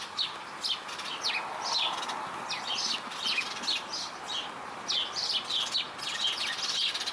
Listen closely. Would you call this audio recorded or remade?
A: recorded